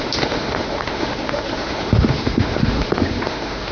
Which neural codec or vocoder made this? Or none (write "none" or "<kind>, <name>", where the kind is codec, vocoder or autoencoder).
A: autoencoder, DAC-VAE